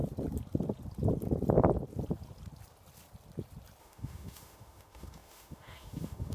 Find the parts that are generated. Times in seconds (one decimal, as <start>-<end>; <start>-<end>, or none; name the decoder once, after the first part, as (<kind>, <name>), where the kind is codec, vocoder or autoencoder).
3.8-6.3 (autoencoder, DAC-VAE)